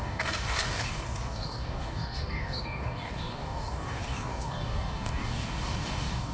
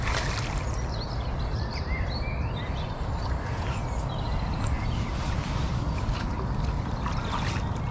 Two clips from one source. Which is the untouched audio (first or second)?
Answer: second